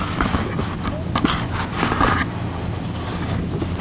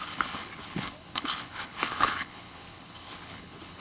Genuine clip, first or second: first